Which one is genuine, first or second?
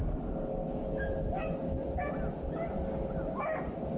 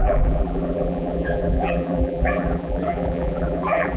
first